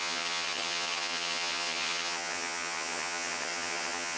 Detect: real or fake fake